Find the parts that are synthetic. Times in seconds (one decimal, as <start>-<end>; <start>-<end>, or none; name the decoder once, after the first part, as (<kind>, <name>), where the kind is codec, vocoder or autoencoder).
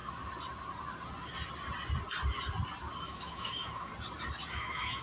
3.0-3.9 (autoencoder, DAC-VAE); 4.5-5.0